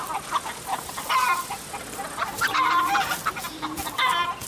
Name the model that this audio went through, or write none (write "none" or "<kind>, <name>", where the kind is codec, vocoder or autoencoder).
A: none